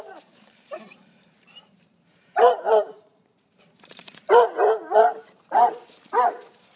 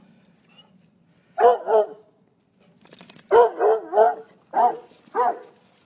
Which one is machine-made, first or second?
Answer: first